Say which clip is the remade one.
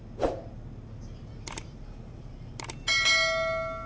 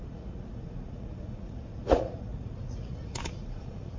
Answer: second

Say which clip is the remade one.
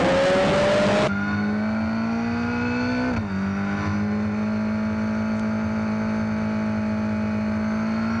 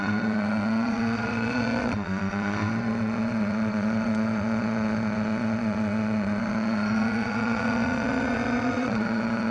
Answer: second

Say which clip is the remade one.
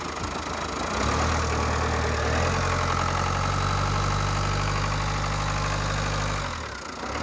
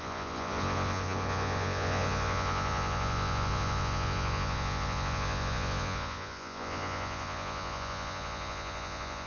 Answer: second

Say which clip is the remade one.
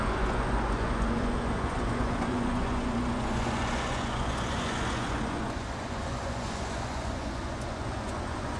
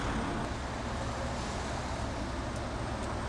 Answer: first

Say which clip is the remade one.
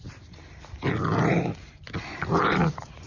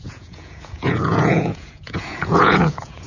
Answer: second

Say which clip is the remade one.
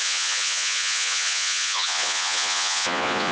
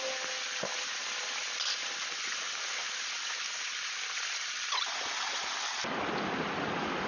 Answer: first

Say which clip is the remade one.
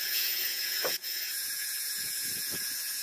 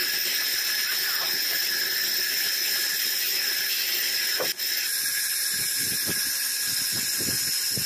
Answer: first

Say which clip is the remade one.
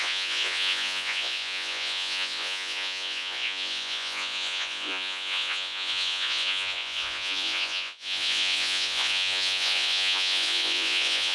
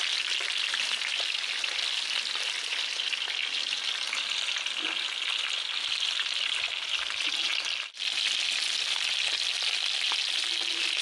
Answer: first